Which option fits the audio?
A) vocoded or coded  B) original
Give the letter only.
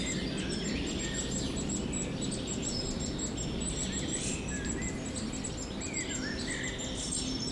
B